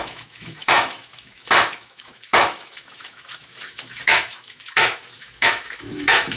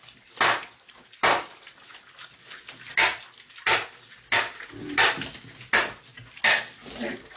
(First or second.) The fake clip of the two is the first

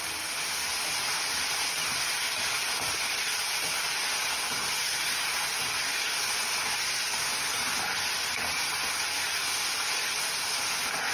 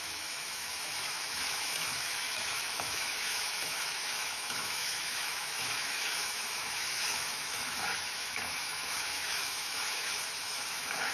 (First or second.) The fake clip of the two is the second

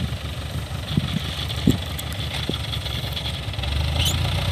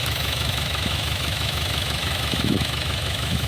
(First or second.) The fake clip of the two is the second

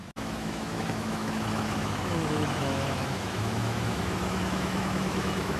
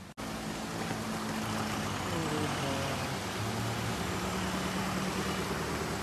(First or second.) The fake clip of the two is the first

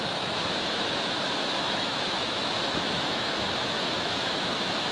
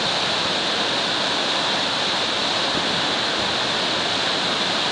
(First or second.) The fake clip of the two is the first